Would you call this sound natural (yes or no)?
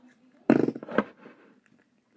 yes